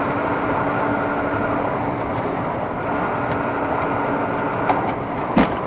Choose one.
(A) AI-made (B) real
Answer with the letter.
B